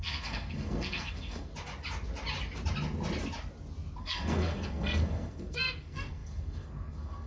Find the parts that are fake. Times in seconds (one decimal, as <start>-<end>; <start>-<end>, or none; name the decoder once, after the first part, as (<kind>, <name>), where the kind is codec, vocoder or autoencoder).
0.0-1.5 (codec, SNAC); 4.0-7.3